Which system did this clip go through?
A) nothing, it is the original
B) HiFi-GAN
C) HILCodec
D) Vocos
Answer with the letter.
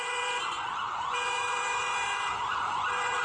D